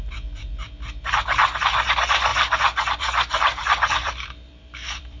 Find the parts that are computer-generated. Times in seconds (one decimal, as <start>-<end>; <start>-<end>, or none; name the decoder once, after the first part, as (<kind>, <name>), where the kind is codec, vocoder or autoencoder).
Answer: 2.3-5.2 (vocoder, BigVGAN v2)